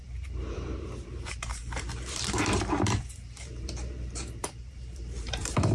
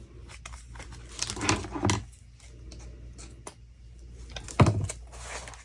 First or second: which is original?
second